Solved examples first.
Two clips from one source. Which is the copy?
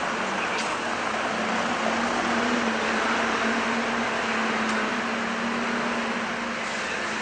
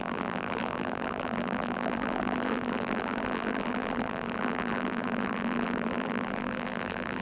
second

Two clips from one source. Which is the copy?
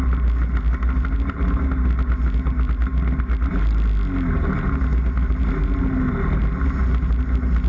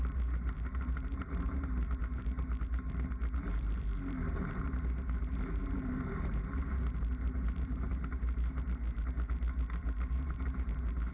second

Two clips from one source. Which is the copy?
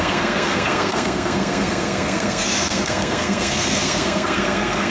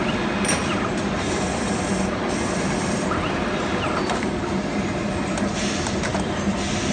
first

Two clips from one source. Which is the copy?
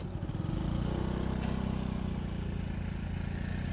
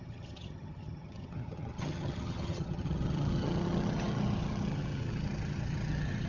second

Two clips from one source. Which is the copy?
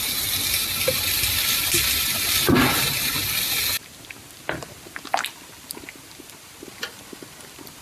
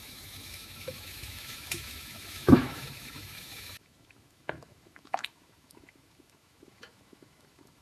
second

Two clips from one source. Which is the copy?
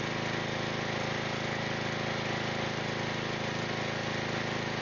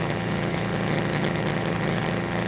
second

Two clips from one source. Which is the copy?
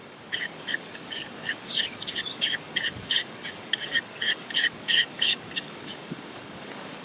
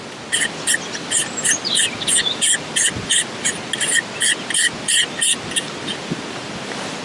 first